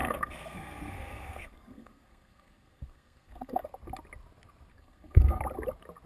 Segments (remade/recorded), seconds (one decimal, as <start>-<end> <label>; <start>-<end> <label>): 0.0-3.7 remade; 3.7-4.7 recorded; 4.7-5.4 remade; 5.4-6.1 recorded